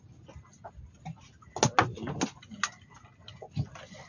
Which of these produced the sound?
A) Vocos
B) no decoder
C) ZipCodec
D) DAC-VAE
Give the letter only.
B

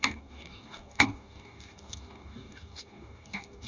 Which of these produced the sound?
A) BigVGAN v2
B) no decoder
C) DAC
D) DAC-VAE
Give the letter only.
C